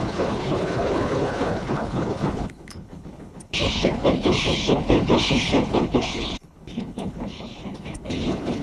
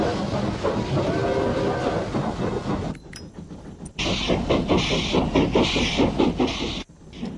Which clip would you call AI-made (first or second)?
first